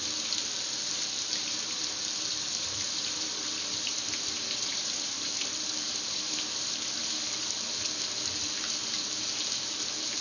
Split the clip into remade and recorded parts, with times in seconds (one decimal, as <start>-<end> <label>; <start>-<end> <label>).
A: 0.0-2.5 recorded; 2.5-7.0 remade; 7.0-10.2 recorded